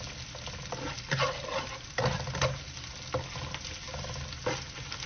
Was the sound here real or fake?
real